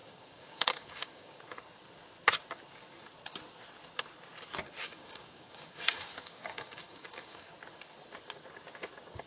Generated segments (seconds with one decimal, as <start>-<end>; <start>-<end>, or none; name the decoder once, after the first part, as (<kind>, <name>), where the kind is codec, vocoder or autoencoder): 0.0-1.4 (codec, DAC); 4.8-7.5